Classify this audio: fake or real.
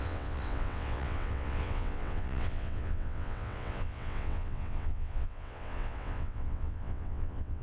fake